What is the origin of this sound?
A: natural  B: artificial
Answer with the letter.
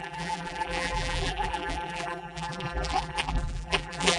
B